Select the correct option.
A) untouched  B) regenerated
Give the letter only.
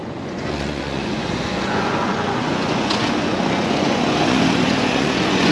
B